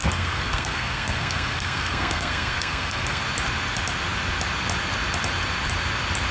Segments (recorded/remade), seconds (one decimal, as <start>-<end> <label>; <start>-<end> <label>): 0.0-3.2 remade; 3.2-6.3 recorded

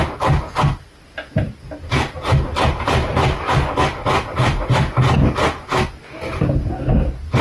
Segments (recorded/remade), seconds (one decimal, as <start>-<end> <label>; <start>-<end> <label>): 0.0-0.9 remade; 0.9-2.5 recorded; 2.5-3.8 remade; 3.8-7.4 recorded

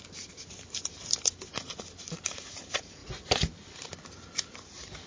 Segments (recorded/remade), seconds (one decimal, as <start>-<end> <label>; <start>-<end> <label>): 0.0-5.1 recorded

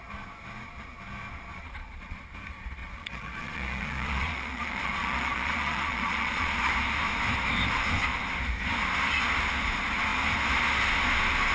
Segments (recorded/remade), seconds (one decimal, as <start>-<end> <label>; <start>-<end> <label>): 0.0-1.5 recorded; 1.5-2.2 remade; 2.2-2.8 recorded; 2.8-6.7 remade; 6.7-11.5 recorded

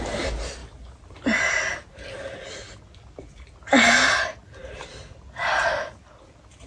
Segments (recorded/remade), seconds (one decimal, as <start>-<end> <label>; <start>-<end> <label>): 0.0-6.7 recorded

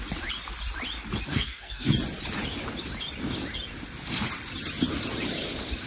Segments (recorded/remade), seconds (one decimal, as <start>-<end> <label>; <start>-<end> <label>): 0.0-1.3 recorded; 1.3-1.9 remade; 1.9-5.9 recorded

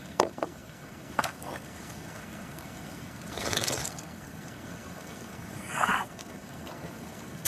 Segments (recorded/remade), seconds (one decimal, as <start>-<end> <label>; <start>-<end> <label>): 0.0-7.5 remade